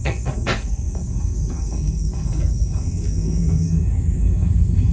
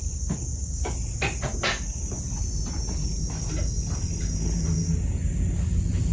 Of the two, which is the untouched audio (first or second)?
second